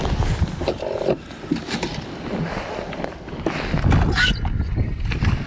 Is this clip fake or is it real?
real